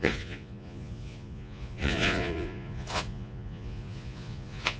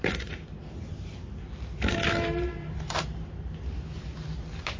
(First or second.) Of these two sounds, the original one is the second